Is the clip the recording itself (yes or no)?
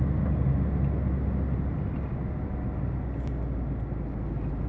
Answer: yes